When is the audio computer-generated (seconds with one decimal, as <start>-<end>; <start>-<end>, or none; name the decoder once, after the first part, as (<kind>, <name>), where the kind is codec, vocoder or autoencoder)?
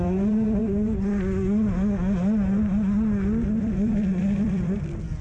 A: 0.0-0.6 (vocoder, BigVGAN v2); 3.6-5.2